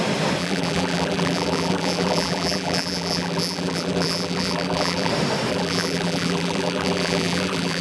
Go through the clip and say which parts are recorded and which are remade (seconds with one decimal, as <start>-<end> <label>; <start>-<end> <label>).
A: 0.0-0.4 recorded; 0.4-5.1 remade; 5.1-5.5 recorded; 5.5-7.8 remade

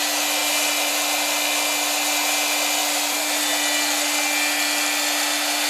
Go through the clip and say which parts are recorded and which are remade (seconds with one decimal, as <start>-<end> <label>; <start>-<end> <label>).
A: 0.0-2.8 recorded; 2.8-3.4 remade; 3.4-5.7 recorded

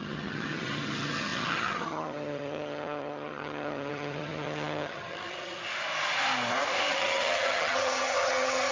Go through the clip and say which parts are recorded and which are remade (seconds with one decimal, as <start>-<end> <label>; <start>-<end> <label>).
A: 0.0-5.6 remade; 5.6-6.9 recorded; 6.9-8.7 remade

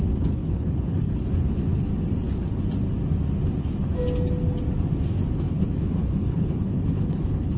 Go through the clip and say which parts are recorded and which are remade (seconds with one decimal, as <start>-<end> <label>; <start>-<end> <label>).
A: 0.0-1.9 remade; 1.9-5.4 recorded; 5.4-7.6 remade

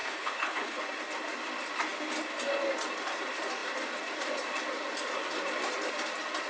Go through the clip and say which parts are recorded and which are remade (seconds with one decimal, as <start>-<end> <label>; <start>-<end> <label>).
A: 0.0-0.8 remade; 0.8-6.5 recorded

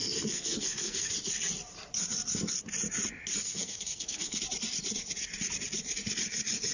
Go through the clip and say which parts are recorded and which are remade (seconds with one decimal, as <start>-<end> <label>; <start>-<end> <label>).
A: 0.0-1.1 remade; 1.1-3.4 recorded; 3.4-4.4 remade; 4.4-6.7 recorded

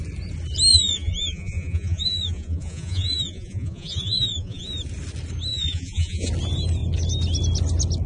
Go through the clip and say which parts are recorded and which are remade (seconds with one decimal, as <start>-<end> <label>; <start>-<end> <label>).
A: 0.0-0.7 recorded; 0.7-4.7 remade; 4.7-5.5 recorded; 5.5-6.3 remade; 6.3-8.1 recorded